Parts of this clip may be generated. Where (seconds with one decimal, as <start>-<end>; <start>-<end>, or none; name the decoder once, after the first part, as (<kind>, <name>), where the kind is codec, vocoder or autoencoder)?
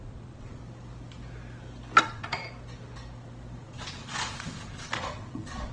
0.0-0.6 (vocoder, Vocos); 2.0-2.4; 3.6-5.7